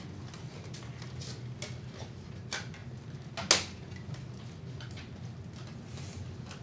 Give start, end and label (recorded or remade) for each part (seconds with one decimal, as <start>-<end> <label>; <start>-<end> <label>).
0.0-6.6 recorded